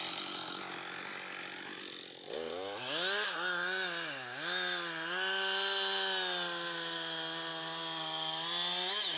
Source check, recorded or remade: recorded